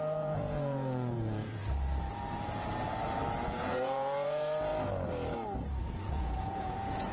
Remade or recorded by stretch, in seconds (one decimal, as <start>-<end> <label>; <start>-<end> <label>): 0.0-1.6 remade; 1.6-3.6 recorded; 3.6-4.7 remade; 4.7-5.8 recorded; 5.8-7.1 remade